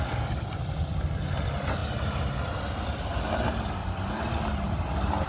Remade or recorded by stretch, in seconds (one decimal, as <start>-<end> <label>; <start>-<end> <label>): 0.0-5.3 recorded

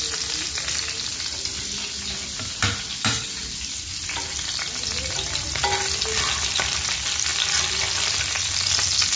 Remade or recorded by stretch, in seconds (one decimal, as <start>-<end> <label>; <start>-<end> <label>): 0.0-9.2 recorded

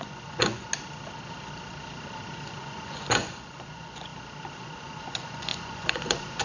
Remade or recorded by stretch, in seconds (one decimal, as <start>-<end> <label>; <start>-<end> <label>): 0.0-0.7 remade; 0.7-2.6 recorded; 2.6-4.1 remade; 4.1-4.6 recorded; 4.6-6.4 remade

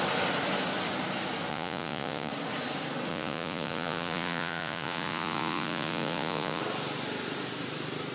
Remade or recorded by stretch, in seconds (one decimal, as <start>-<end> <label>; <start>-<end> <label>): 0.0-1.5 recorded; 1.5-2.3 remade; 2.3-3.1 recorded; 3.1-6.6 remade; 6.6-8.1 recorded

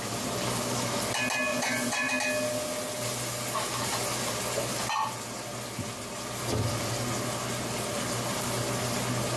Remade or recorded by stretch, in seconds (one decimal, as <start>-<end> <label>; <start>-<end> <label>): 0.0-1.5 recorded; 1.5-2.1 remade; 2.1-9.4 recorded

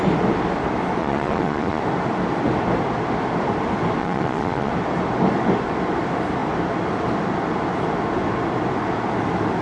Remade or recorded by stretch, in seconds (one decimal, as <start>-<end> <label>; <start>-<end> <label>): 0.0-1.0 recorded; 1.0-1.8 remade; 1.8-4.0 recorded; 4.0-4.7 remade; 4.7-9.6 recorded

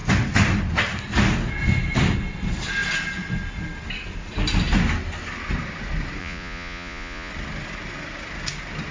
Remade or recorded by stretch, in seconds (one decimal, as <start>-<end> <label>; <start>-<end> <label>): 0.0-6.2 recorded; 6.2-7.3 remade; 7.3-8.9 recorded

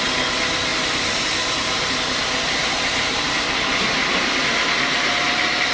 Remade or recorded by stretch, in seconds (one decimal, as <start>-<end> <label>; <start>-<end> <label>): 0.0-5.7 recorded